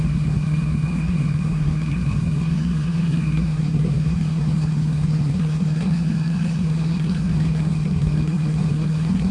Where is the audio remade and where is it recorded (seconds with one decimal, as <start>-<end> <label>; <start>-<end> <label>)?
0.0-9.3 remade